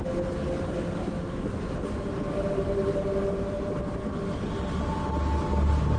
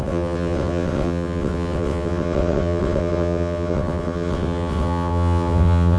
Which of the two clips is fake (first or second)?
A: second